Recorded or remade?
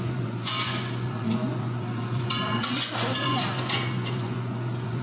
remade